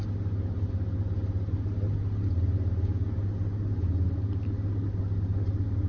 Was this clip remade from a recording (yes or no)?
no